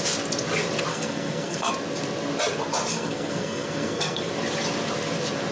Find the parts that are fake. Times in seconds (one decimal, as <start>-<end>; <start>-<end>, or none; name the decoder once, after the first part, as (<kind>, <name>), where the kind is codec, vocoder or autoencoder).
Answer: 0.9-1.7 (codec, SNAC); 2.9-4.3